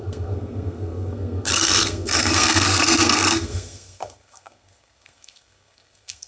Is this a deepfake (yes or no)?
yes